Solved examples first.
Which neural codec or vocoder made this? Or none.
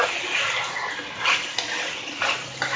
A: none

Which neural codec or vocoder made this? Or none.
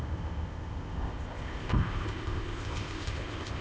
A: codec, ZipCodec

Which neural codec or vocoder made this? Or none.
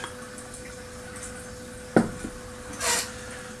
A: none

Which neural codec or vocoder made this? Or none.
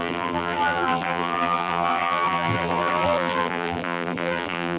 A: vocoder, BigVGAN v2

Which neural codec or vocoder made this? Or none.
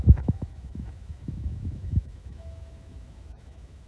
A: autoencoder, DAC-VAE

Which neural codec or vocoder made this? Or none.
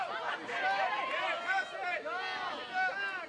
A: none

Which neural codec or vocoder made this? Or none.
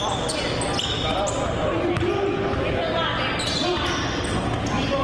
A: none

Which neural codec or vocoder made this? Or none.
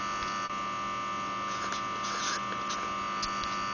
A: none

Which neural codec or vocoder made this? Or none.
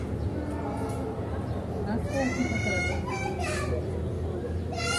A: none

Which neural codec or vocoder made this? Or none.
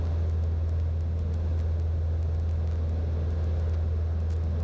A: none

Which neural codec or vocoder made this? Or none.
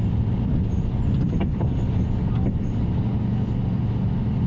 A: none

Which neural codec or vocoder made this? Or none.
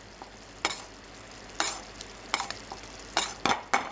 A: none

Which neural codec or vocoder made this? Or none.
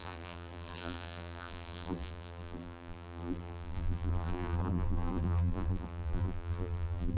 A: vocoder, BigVGAN v2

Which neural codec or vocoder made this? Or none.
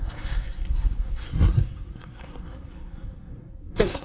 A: codec, SNAC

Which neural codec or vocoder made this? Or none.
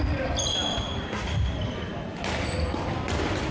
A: none